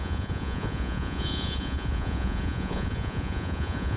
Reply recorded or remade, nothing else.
remade